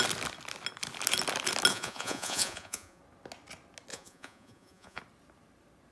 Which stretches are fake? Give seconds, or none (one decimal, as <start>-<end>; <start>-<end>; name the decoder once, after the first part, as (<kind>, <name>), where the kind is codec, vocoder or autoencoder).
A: 1.7-3.0 (vocoder, Vocos); 3.9-5.0